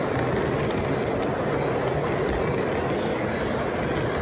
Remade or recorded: recorded